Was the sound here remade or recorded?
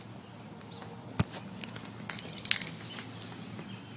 recorded